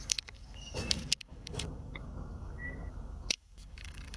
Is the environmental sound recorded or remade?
remade